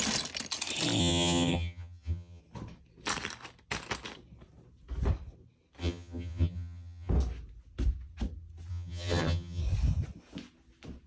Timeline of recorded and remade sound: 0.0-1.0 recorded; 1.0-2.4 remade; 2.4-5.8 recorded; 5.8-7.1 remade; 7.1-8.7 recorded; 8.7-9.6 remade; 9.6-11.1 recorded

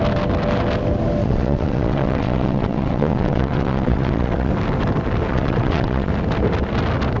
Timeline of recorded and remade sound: 0.0-1.2 recorded; 1.2-4.5 remade; 4.5-5.3 recorded; 5.3-6.1 remade; 6.1-7.2 recorded

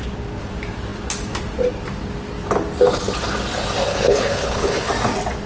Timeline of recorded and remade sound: 0.0-3.9 recorded; 3.9-4.9 remade; 4.9-5.5 recorded

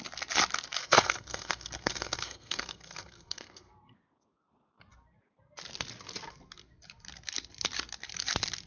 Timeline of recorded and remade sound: 0.0-0.8 recorded; 0.8-3.7 remade; 3.7-8.7 recorded

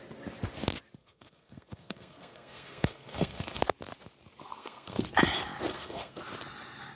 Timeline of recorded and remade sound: 0.0-1.0 recorded; 1.0-3.6 remade; 3.6-4.5 recorded; 4.5-5.0 remade; 5.0-5.7 recorded; 5.7-6.2 remade; 6.2-7.0 recorded

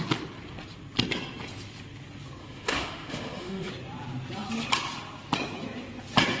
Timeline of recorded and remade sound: 0.0-2.4 recorded; 2.4-3.7 remade; 3.7-6.4 recorded